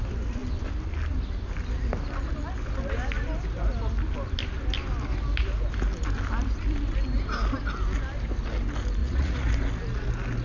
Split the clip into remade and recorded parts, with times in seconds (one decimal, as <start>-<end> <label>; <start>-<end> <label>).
0.0-9.0 recorded; 9.0-9.5 remade; 9.5-10.4 recorded